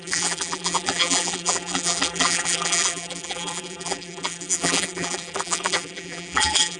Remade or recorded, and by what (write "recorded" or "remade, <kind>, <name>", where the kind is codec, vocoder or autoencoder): remade, vocoder, BigVGAN v2